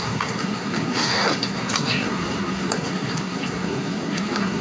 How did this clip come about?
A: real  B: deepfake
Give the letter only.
B